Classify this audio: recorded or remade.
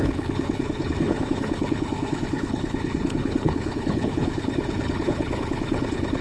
remade